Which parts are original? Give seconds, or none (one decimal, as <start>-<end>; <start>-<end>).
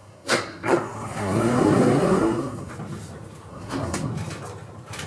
2.7-3.5; 4.1-5.1